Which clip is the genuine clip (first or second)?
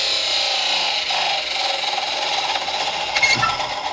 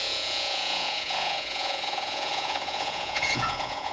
first